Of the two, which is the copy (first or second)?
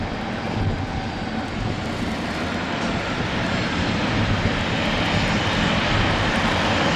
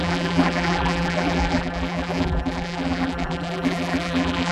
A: second